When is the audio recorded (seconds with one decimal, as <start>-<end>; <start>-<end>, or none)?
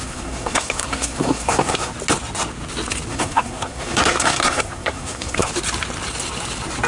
1.9-3.1; 5.5-6.9